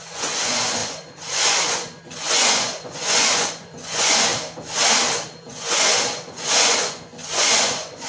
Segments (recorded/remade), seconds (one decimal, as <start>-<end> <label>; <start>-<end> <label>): 0.0-4.3 remade; 4.3-5.4 recorded; 5.4-8.1 remade